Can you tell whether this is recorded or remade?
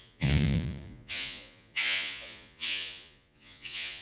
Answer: remade